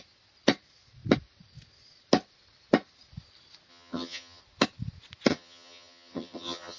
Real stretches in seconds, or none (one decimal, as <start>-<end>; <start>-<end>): 0.0-3.7; 4.4-5.3